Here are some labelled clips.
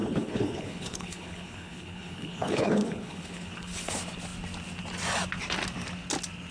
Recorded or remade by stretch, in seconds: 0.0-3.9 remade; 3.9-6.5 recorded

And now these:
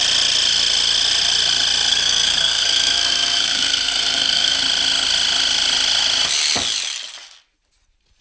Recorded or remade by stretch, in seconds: 0.0-1.9 recorded; 1.9-4.6 remade; 4.6-8.2 recorded

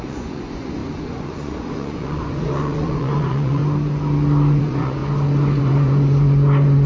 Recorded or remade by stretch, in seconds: 0.0-3.6 remade; 3.6-4.6 recorded; 4.6-5.0 remade; 5.0-5.6 recorded; 5.6-6.9 remade

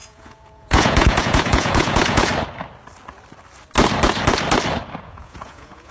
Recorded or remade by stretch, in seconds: 0.0-2.3 remade; 2.3-5.0 recorded; 5.0-5.9 remade